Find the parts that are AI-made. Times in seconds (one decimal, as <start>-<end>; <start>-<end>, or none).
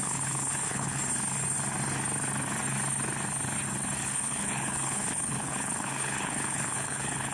0.0-1.0; 4.0-7.3